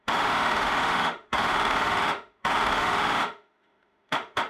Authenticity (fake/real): fake